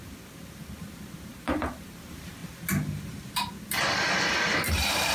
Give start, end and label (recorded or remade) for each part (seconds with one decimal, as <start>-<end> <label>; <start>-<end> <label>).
0.0-2.4 remade; 2.4-4.3 recorded; 4.3-5.1 remade